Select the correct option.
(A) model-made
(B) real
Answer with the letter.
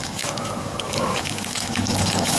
A